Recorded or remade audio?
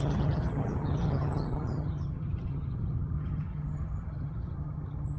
remade